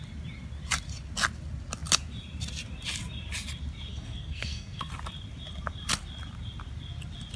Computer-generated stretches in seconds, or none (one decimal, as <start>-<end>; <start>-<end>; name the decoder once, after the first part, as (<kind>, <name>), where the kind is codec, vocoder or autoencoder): 3.9-4.9 (codec, SNAC)